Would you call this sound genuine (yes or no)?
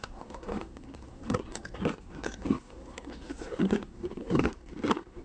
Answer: no